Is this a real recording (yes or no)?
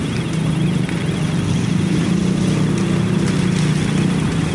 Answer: yes